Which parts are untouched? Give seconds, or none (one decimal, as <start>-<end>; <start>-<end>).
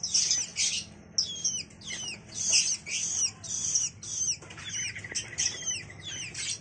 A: 0.0-6.6